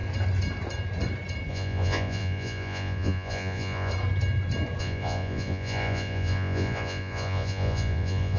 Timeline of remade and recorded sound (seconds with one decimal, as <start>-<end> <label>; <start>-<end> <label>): 0.0-1.5 recorded; 1.5-3.9 remade; 3.9-4.8 recorded; 4.8-8.4 remade